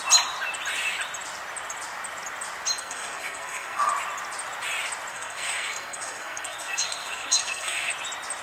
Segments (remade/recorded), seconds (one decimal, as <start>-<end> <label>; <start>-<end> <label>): 0.0-2.8 recorded; 2.8-3.9 remade; 3.9-5.1 recorded; 5.1-7.9 remade; 7.9-8.4 recorded